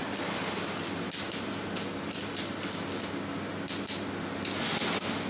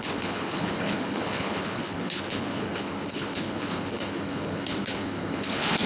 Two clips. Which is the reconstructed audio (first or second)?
second